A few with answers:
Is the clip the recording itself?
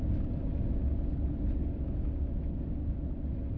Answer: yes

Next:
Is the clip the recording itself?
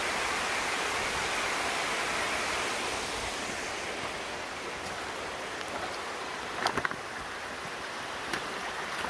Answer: yes